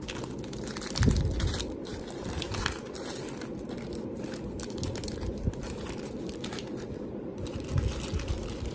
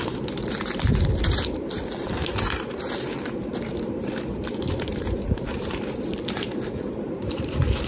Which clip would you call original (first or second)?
first